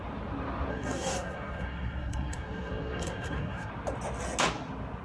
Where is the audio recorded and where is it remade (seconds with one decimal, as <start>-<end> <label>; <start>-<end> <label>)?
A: 0.0-0.7 recorded; 0.7-3.7 remade; 3.7-5.0 recorded